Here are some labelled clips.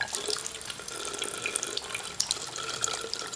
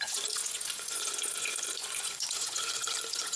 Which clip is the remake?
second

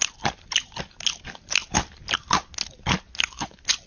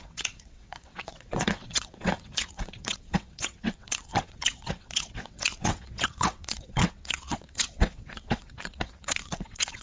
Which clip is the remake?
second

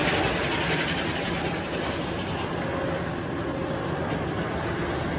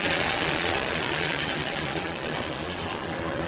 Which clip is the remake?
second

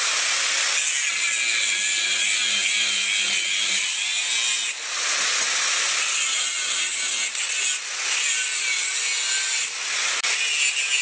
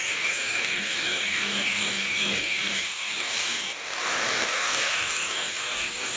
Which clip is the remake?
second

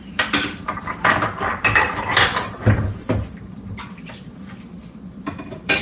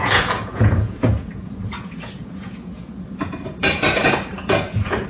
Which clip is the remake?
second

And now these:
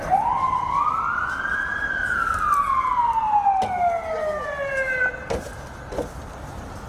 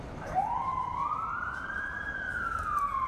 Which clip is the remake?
second